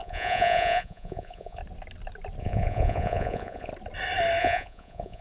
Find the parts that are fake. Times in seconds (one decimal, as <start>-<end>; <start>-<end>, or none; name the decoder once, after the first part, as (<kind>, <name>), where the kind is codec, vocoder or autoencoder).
0.0-1.6 (vocoder, Vocos); 2.4-3.7; 4.4-5.2